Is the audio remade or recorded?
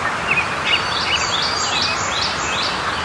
recorded